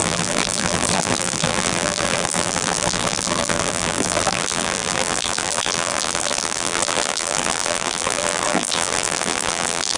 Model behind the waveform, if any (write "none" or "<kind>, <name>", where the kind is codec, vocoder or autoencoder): vocoder, BigVGAN v2